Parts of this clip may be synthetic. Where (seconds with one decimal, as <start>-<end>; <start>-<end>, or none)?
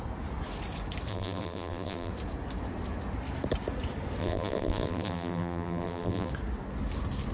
1.1-2.1; 4.2-6.3